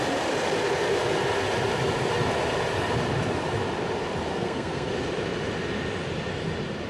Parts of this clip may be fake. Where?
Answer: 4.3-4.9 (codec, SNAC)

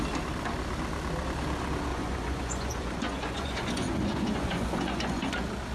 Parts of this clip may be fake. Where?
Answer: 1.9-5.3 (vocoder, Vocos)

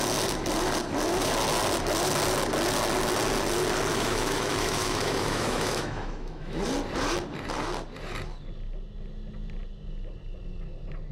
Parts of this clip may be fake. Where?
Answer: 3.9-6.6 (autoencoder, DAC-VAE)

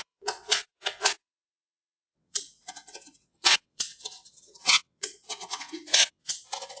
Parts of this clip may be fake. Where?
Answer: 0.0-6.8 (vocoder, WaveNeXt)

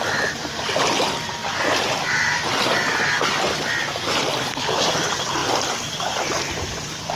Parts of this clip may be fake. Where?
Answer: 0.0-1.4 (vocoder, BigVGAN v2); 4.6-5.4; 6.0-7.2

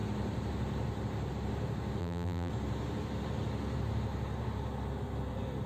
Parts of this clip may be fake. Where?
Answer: 2.0-2.5 (vocoder, BigVGAN v2)

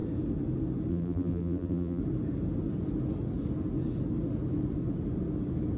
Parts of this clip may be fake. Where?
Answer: 0.9-2.0 (vocoder, BigVGAN v2)

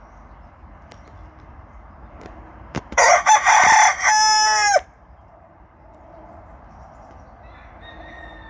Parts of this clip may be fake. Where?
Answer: 1.5-6.6 (vocoder, BigVGAN v2)